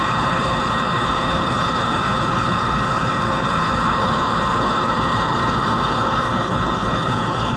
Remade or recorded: remade